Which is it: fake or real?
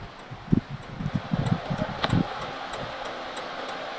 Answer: real